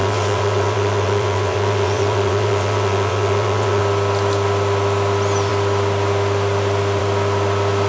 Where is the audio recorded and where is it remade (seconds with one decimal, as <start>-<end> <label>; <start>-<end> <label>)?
0.0-3.8 remade; 3.8-7.9 recorded